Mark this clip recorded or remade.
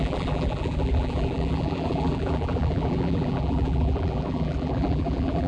remade